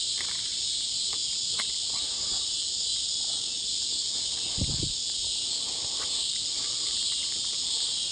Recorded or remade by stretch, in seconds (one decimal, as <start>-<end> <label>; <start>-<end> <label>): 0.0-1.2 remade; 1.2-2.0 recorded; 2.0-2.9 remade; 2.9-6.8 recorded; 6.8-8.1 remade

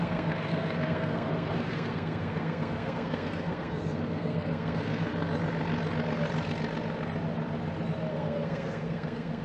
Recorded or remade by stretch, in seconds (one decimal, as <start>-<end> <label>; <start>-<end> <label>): 0.0-5.1 remade; 5.1-8.1 recorded; 8.1-9.4 remade

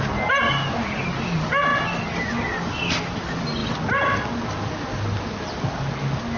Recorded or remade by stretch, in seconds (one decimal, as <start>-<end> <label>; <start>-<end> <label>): 0.0-6.4 recorded

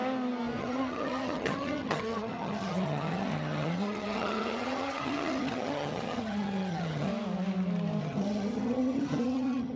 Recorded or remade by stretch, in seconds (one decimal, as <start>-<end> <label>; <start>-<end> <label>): 0.0-0.6 recorded; 0.6-7.1 remade; 7.1-8.0 recorded; 8.0-9.8 remade

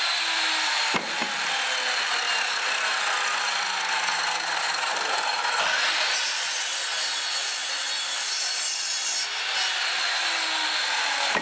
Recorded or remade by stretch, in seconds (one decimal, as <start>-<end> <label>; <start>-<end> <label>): 0.0-11.4 recorded

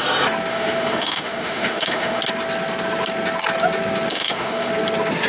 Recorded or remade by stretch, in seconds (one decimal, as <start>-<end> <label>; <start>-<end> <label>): 0.0-0.5 recorded; 0.5-2.2 remade; 2.2-4.1 recorded; 4.1-4.7 remade; 4.7-5.3 recorded